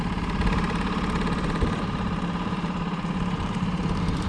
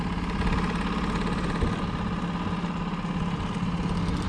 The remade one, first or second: first